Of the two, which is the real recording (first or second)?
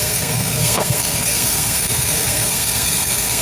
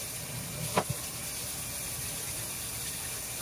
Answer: second